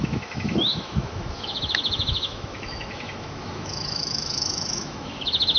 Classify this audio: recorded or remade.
remade